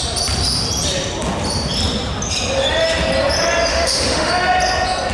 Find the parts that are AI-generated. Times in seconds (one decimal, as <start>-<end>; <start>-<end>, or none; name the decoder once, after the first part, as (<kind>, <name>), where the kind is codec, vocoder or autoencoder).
3.7-4.3 (autoencoder, DAC-VAE)